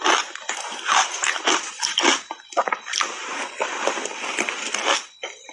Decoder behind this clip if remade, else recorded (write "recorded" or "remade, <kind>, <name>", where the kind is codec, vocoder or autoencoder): recorded